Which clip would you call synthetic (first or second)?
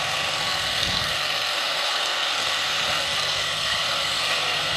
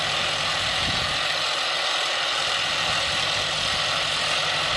first